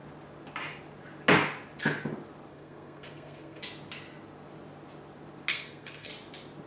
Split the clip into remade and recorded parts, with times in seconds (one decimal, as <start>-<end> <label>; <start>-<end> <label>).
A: 0.0-2.5 recorded; 2.5-3.6 remade; 3.6-5.5 recorded; 5.5-6.1 remade; 6.1-6.7 recorded